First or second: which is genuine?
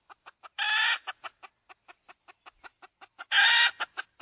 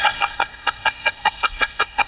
first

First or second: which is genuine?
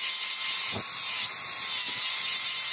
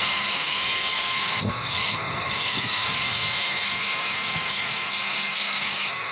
first